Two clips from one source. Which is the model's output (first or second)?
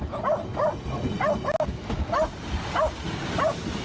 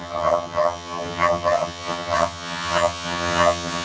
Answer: second